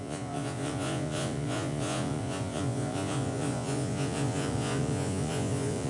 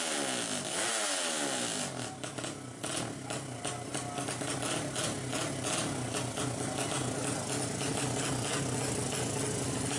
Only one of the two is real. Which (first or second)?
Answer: second